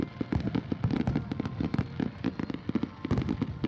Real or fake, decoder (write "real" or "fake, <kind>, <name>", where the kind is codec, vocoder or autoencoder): real